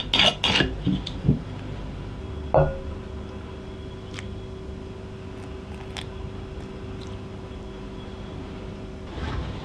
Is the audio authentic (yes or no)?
yes